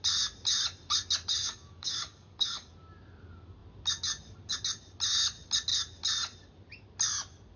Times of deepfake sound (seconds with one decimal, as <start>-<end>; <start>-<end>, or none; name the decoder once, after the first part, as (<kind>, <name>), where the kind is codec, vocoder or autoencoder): 1.4-2.7 (codec, DAC)